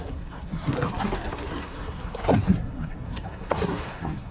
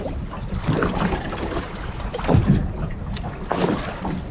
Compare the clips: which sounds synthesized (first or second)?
first